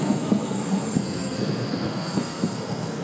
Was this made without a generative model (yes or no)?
no